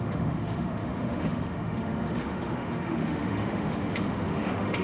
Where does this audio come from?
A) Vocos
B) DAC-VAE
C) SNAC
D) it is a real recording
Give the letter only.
B